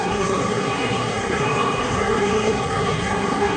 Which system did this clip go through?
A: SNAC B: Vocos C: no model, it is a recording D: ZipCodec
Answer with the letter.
A